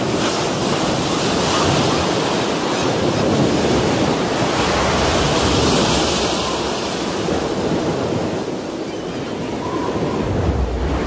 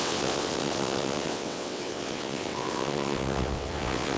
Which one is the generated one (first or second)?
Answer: second